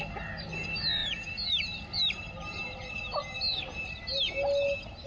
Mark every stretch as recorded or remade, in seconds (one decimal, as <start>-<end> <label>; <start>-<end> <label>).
0.0-5.1 recorded